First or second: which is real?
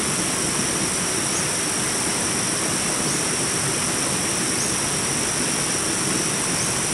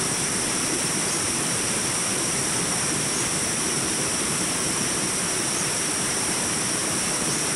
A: first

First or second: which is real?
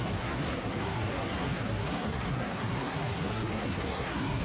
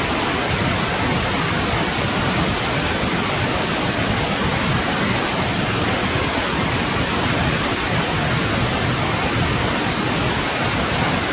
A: second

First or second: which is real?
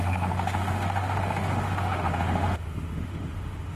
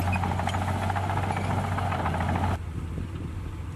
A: second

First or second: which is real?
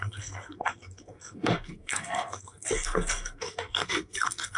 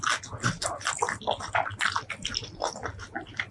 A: second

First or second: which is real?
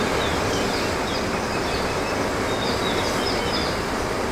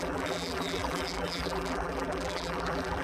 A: first